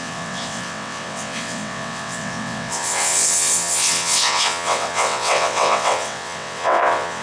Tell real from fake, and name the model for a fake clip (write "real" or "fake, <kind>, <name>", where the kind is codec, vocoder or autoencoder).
fake, vocoder, WaveNeXt